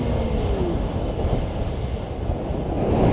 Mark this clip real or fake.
real